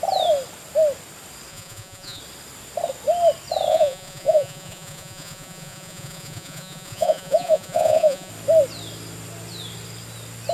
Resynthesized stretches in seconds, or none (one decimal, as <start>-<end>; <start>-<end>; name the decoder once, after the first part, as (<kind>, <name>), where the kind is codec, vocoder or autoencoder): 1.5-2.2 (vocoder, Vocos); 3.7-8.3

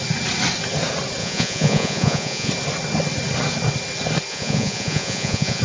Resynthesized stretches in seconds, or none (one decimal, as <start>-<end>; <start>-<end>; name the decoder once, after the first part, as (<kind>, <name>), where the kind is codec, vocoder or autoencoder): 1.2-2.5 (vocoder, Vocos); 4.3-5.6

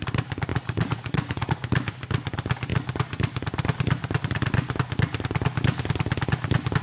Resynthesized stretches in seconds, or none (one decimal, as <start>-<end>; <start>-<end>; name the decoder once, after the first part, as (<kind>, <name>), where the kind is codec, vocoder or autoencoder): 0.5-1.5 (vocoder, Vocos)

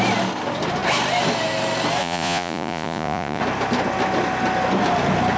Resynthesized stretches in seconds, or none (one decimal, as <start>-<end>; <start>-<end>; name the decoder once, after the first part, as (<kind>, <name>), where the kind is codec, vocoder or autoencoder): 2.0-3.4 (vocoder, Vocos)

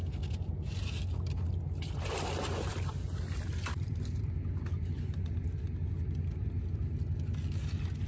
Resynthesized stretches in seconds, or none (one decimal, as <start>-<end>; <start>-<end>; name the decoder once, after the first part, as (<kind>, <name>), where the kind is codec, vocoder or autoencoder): none